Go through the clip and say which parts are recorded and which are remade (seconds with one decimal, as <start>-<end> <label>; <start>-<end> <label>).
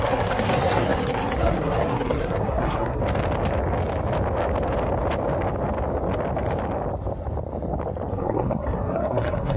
0.0-3.0 remade; 3.0-8.1 recorded; 8.1-9.6 remade